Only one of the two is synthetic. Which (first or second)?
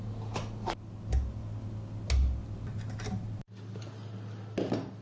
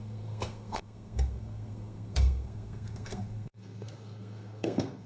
second